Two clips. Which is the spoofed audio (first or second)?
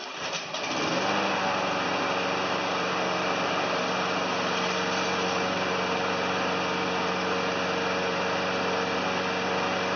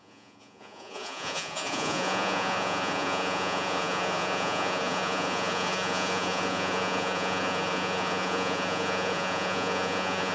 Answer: second